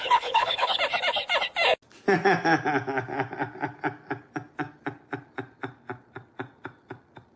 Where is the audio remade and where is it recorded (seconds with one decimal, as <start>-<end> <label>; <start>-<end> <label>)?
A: 0.0-0.8 remade; 0.8-7.4 recorded